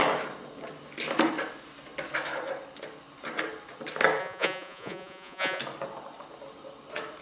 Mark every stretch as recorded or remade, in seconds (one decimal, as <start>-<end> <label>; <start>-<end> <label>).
0.0-4.2 recorded; 4.2-5.6 remade; 5.6-7.2 recorded